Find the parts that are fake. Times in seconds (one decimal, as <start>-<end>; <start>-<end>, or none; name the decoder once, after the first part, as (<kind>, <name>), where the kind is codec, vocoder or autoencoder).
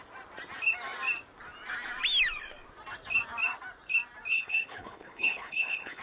4.3-6.0 (codec, HILCodec)